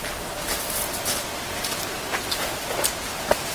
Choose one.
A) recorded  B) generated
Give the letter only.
B